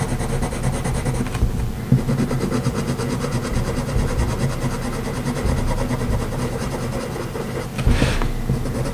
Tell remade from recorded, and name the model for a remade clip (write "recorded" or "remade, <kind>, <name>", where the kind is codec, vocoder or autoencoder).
recorded